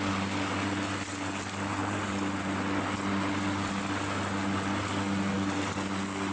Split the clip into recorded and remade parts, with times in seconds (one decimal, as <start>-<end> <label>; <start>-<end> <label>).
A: 0.0-6.3 recorded